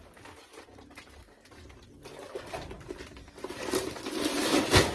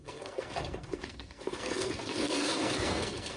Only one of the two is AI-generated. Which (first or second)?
second